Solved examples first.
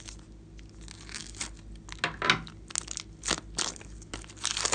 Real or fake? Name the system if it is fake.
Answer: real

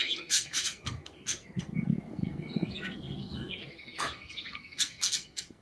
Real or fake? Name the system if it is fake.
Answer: fake, codec, SNAC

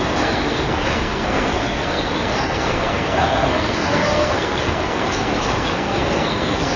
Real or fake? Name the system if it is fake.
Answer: fake, codec, SNAC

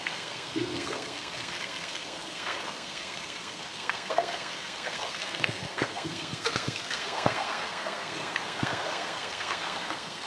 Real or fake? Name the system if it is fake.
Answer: fake, codec, SNAC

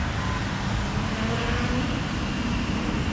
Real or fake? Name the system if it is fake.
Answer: real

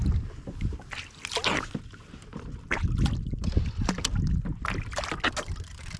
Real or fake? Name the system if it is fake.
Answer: real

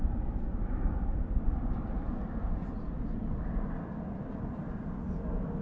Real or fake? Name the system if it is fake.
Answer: real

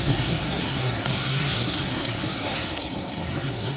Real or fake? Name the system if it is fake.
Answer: fake, codec, SNAC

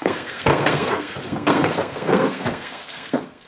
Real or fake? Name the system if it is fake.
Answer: fake, codec, SNAC